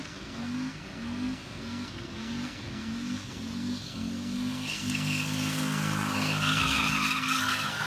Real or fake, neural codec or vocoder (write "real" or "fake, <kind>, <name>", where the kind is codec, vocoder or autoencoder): fake, codec, SNAC